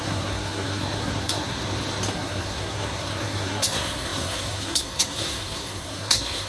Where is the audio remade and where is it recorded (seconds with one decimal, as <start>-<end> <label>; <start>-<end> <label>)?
0.0-1.6 remade; 1.6-2.1 recorded; 2.1-6.5 remade